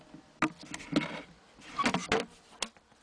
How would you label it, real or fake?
real